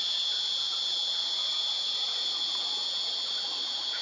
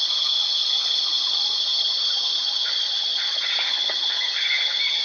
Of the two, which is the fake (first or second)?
second